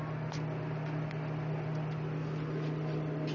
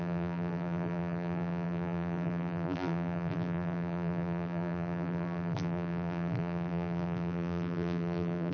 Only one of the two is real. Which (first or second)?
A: first